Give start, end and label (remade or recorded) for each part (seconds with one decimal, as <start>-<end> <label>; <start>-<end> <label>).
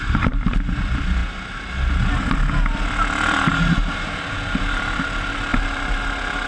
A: 0.0-5.5 recorded; 5.5-6.0 remade; 6.0-6.5 recorded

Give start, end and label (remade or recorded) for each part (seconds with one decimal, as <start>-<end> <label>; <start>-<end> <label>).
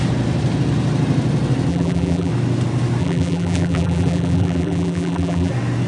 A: 0.0-1.7 recorded; 1.7-2.3 remade; 2.3-3.0 recorded; 3.0-5.5 remade; 5.5-5.9 recorded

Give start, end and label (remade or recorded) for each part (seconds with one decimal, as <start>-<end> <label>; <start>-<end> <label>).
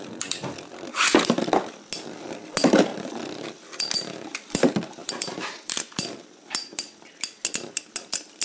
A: 0.0-5.0 recorded; 5.0-5.8 remade; 5.8-8.4 recorded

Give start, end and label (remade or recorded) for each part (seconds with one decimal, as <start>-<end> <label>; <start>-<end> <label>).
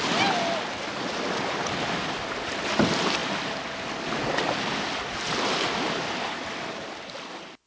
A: 0.0-7.7 recorded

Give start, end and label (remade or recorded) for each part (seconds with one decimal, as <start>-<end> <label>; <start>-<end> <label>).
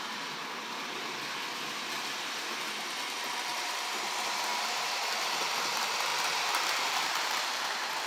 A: 0.0-3.5 recorded; 3.5-5.0 remade; 5.0-6.1 recorded; 6.1-7.6 remade; 7.6-8.1 recorded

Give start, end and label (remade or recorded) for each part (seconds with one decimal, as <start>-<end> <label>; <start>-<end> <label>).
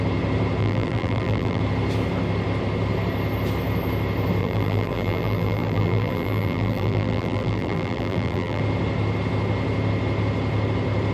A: 0.0-0.6 recorded; 0.6-1.6 remade; 1.6-4.4 recorded; 4.4-8.6 remade; 8.6-11.1 recorded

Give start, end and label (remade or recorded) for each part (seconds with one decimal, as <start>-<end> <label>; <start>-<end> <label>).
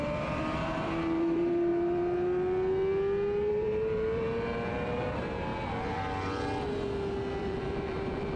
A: 0.0-1.7 remade; 1.7-3.5 recorded; 3.5-5.5 remade; 5.5-7.4 recorded; 7.4-8.4 remade